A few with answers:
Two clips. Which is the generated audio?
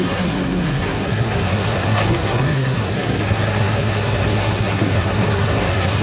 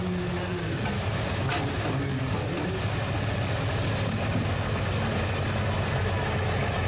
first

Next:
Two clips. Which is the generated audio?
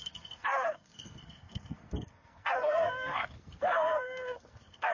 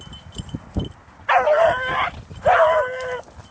first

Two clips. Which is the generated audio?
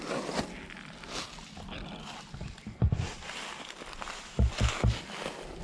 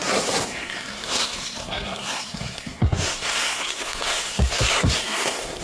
second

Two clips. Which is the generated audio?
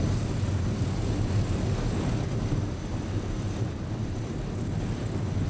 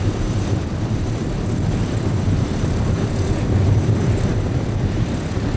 second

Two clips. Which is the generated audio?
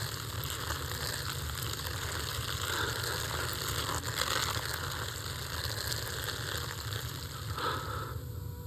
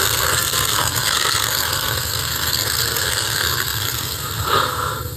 second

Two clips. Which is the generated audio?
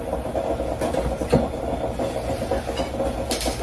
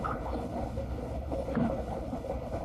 second